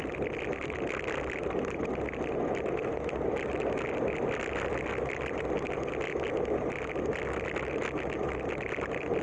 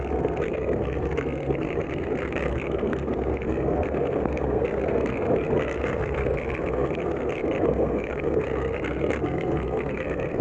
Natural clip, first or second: first